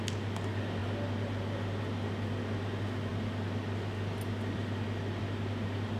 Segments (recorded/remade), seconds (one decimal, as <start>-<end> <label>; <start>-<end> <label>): 0.0-6.0 recorded